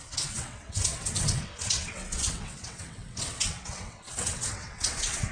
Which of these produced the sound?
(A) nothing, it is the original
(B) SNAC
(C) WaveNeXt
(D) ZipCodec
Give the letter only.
C